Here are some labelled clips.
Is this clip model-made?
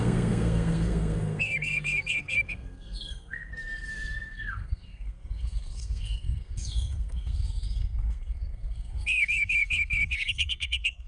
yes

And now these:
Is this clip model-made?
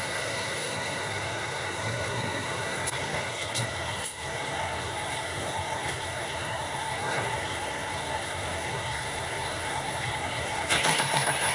yes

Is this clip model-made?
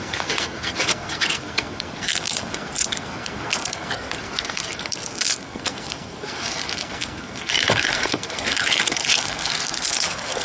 yes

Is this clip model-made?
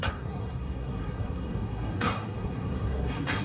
yes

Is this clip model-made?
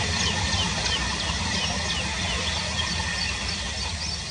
no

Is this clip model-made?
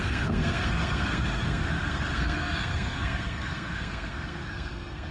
yes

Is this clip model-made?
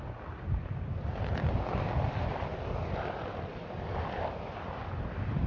no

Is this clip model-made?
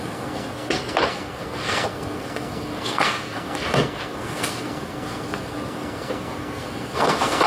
yes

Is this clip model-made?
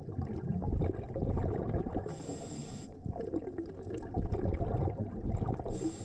no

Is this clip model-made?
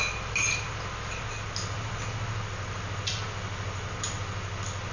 no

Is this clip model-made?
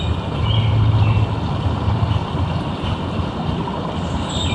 no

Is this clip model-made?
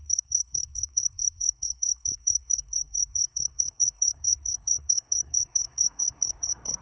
yes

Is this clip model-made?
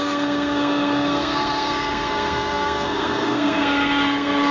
yes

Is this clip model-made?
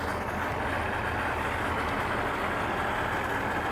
no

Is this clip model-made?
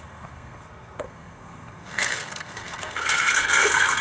yes